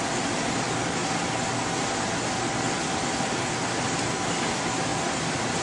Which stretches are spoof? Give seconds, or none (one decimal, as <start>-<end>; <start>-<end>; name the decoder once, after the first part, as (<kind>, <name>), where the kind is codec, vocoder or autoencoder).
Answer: none